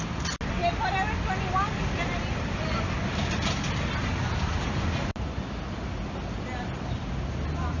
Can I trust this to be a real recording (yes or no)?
yes